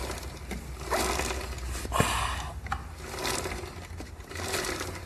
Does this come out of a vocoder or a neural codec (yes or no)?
no